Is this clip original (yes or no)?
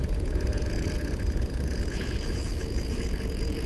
no